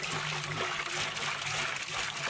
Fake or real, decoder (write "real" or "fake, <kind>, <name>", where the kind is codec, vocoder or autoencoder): real